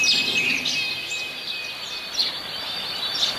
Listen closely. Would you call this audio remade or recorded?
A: recorded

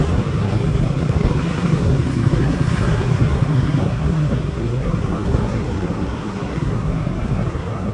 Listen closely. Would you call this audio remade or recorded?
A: remade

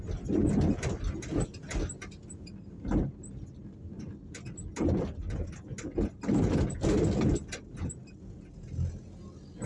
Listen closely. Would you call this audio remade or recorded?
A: recorded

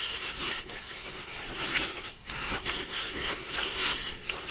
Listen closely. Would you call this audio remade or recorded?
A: remade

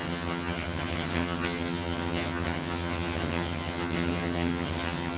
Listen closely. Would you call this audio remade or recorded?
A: remade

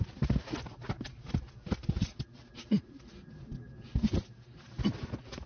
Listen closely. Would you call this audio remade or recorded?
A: recorded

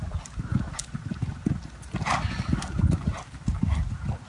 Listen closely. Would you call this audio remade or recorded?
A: recorded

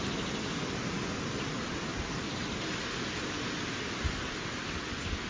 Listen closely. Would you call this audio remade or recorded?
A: recorded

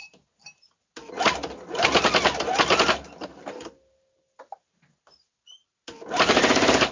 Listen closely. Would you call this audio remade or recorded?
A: recorded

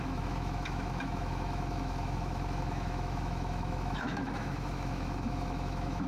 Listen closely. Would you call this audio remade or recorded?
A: remade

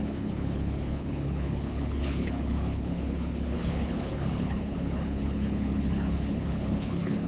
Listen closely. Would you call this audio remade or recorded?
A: remade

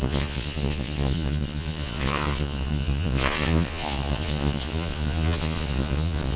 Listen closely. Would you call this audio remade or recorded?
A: remade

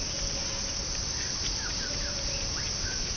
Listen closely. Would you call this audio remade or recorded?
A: recorded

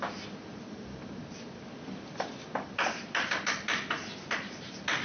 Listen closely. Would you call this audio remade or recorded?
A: recorded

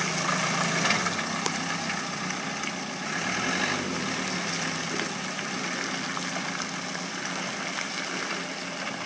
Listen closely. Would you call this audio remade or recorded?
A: recorded